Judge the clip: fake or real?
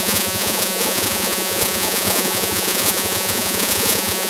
fake